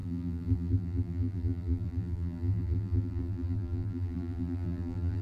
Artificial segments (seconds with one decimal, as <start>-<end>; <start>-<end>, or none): 0.0-5.2